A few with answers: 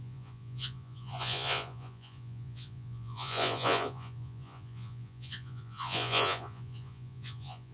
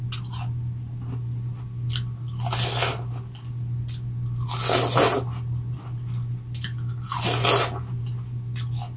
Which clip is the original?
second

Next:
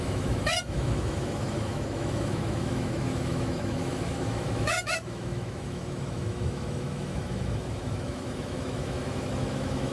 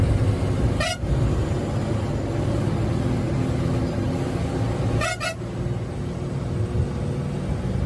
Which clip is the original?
second